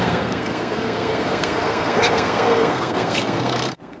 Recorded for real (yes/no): no